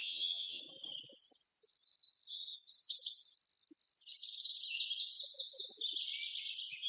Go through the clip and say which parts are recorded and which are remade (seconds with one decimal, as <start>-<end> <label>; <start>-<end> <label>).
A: 0.0-0.6 remade; 0.6-6.9 recorded